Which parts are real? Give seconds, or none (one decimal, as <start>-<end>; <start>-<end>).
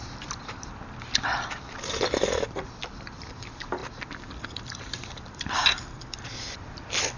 3.8-4.6